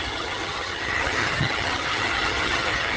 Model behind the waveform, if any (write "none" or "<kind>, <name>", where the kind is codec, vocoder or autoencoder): vocoder, HiFi-GAN